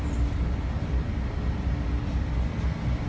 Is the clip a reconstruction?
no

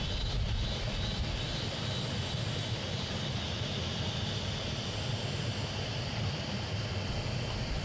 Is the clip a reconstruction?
no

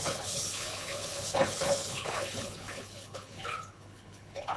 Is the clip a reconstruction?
yes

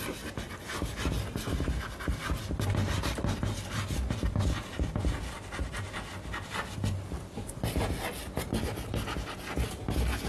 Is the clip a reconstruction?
no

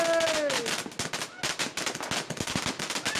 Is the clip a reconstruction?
no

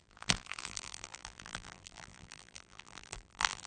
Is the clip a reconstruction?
yes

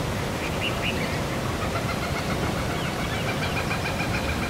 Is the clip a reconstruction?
no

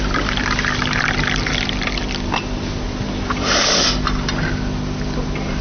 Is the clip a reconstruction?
no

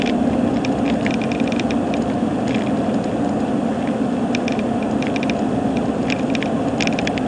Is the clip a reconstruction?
no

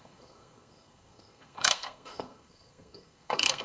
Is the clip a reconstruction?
yes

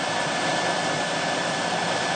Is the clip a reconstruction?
yes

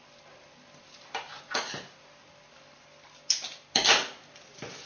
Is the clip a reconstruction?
no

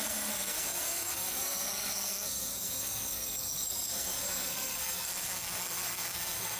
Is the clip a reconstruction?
yes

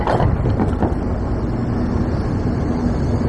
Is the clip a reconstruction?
no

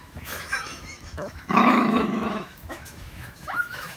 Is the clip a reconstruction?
yes